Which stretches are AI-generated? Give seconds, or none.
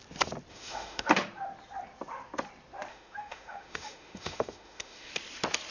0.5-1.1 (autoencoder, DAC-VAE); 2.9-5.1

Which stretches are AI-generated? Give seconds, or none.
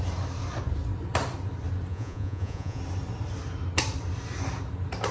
1.9-2.8 (vocoder, Vocos)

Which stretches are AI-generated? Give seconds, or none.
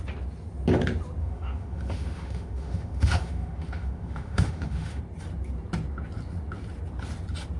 1.2-5.0 (autoencoder, DAC-VAE)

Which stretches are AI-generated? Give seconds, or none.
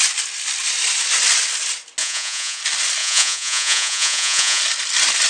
2.0-2.6 (vocoder, Vocos); 3.0-4.6